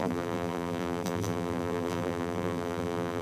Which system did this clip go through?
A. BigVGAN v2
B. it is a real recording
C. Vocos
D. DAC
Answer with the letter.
A